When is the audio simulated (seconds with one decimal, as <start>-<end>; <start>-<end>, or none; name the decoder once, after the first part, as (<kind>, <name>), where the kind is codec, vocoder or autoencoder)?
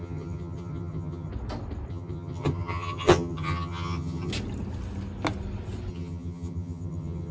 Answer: 0.0-1.3 (vocoder, HiFi-GAN); 1.9-4.3; 5.9-7.3